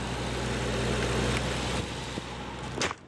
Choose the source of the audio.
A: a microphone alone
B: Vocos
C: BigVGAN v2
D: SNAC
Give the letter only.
A